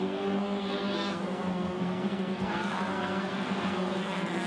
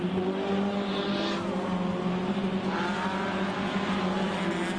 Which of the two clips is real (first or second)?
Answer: second